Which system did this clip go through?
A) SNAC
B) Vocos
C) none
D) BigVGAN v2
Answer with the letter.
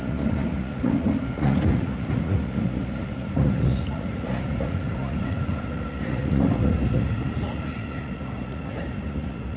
B